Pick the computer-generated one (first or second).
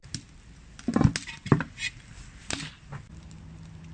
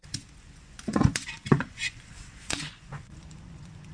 second